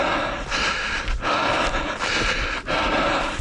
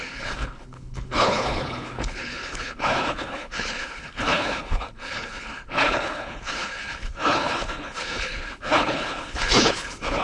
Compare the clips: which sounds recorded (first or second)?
first